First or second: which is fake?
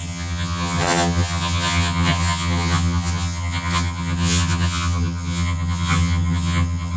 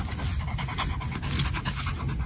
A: first